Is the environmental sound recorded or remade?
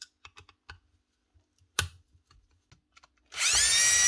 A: recorded